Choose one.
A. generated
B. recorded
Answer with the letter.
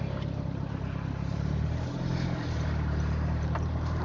A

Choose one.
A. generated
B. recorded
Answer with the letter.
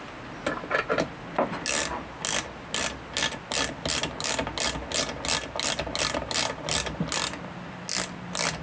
B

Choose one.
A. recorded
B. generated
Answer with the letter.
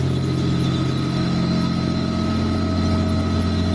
A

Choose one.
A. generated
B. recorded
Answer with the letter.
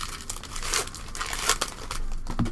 B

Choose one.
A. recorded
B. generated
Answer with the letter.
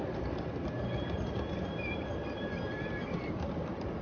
A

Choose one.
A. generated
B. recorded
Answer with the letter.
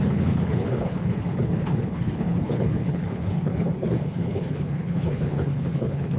A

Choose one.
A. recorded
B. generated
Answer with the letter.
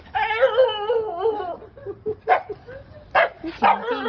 A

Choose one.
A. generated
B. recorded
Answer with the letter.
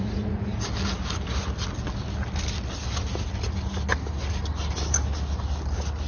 B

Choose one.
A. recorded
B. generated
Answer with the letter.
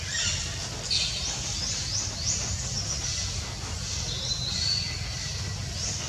A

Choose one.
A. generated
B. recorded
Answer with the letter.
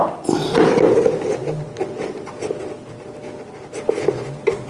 B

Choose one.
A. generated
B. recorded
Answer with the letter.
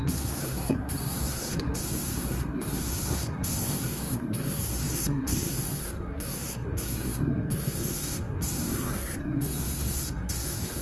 A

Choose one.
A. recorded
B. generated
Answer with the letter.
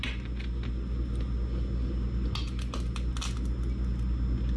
A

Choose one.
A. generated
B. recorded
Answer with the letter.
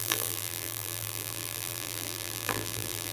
A